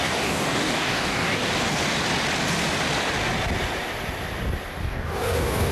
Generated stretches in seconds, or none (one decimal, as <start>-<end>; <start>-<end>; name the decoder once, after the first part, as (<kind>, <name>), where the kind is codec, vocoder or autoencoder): 0.0-1.4 (codec, DAC); 4.8-5.7